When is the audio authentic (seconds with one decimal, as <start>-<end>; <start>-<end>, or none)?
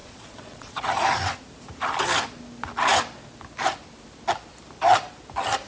0.8-5.7